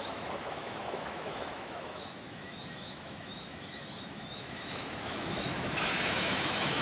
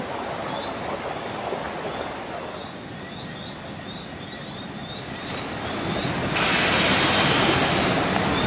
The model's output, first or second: first